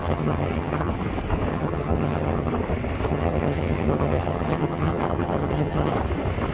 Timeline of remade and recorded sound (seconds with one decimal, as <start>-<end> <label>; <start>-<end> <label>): 0.0-0.9 remade; 0.9-1.5 recorded; 1.5-2.5 remade; 2.5-3.1 recorded; 3.1-5.9 remade; 5.9-6.5 recorded